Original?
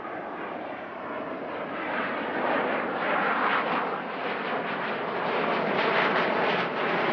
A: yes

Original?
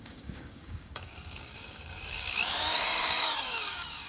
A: no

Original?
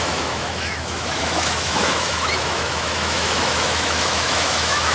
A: no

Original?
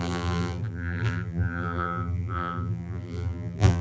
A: no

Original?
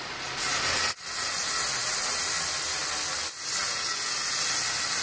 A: yes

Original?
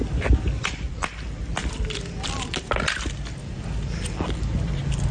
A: yes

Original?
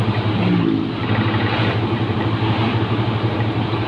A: yes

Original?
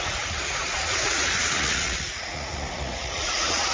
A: no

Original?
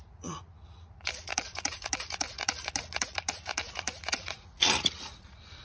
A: no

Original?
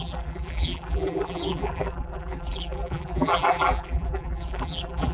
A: no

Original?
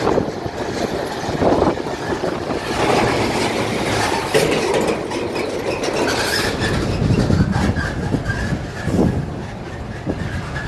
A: yes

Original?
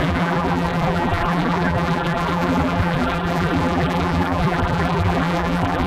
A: no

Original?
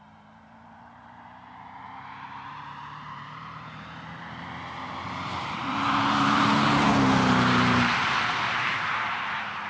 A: no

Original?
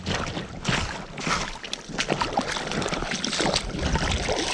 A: yes